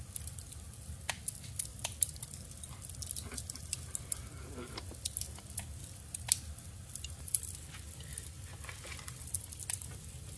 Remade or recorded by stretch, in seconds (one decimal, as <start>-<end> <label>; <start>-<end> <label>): 0.0-10.4 recorded